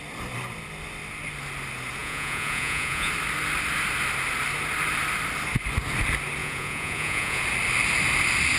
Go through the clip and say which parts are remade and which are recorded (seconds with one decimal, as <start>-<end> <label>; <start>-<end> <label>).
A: 0.0-2.0 recorded; 2.0-3.1 remade; 3.1-6.4 recorded; 6.4-7.4 remade; 7.4-8.6 recorded